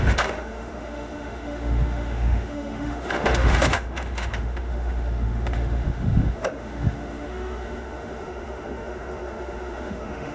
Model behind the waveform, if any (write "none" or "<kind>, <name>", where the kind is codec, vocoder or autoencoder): autoencoder, DAC-VAE